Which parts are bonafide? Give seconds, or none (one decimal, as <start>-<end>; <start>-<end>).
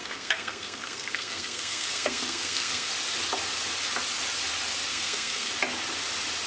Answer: 2.9-4.9; 5.5-6.5